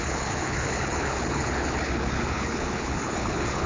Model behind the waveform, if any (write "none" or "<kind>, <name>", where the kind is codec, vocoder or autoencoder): codec, HILCodec